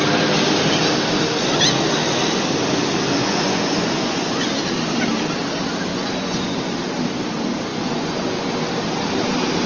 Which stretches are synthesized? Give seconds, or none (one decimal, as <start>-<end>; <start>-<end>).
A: 3.2-4.5; 5.9-6.5; 7.7-8.5